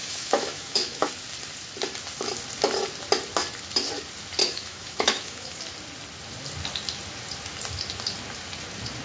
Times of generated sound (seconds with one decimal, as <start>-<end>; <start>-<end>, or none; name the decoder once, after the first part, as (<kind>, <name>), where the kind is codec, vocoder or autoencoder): 0.0-1.1 (autoencoder, DAC-VAE); 4.4-5.6